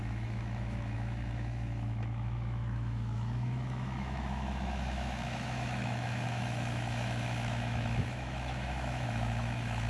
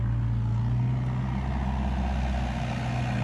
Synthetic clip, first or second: first